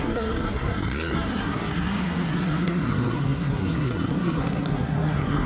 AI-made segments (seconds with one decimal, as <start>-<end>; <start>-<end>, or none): 0.0-5.5